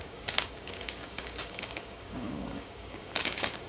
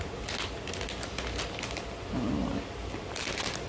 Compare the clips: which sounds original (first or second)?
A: second